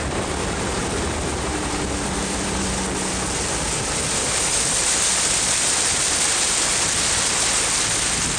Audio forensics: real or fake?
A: real